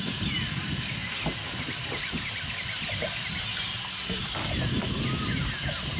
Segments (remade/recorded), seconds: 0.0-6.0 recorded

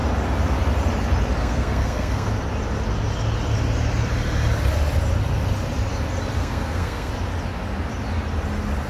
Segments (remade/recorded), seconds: 0.0-1.4 recorded; 1.4-2.3 remade; 2.3-6.4 recorded; 6.4-7.1 remade; 7.1-8.9 recorded

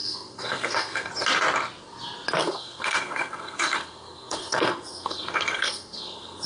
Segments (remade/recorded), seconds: 0.0-1.1 remade; 1.1-2.4 recorded; 2.4-6.5 remade